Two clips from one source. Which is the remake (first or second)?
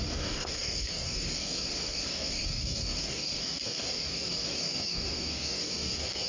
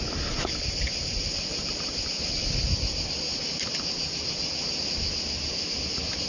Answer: first